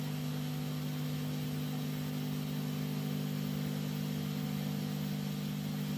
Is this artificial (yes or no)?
no